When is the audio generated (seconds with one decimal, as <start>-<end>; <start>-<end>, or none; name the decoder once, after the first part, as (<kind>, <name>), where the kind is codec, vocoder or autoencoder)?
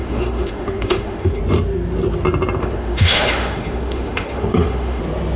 0.0-1.4 (autoencoder, DAC-VAE); 2.6-5.0